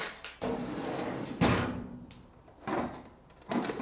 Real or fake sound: real